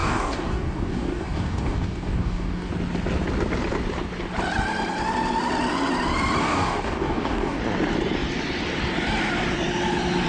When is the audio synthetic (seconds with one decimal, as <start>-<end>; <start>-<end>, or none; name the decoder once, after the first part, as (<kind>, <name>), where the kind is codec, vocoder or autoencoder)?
0.0-2.7 (codec, DAC); 6.4-7.6